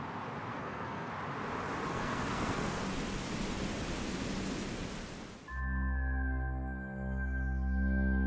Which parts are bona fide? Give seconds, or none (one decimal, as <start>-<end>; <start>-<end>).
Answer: 0.0-0.5; 1.1-1.9; 2.8-8.3